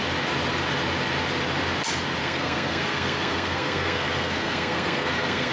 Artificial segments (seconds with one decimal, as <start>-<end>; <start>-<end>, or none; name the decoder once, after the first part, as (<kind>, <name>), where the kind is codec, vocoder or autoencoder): 2.2-5.5 (codec, SNAC)